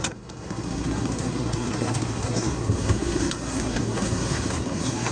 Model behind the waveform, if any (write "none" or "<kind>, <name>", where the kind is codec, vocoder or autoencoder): codec, SNAC